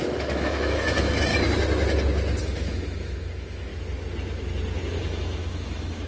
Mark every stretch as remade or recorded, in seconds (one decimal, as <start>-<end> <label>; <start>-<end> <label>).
0.0-1.3 remade; 1.3-2.4 recorded; 2.4-3.7 remade; 3.7-5.0 recorded; 5.0-6.1 remade